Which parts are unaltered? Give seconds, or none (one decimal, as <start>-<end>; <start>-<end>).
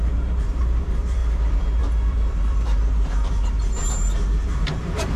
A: 1.2-1.8